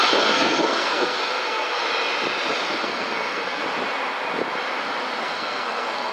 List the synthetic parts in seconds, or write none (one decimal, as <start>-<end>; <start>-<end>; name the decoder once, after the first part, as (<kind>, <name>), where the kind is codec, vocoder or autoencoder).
0.0-1.8 (codec, SNAC); 2.8-3.6; 5.2-6.1